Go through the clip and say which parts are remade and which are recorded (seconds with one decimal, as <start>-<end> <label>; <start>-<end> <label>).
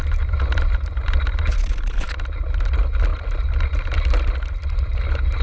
0.0-5.4 recorded